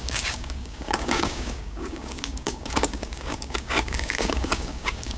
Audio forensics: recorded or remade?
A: remade